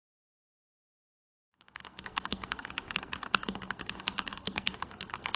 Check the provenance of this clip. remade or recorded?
remade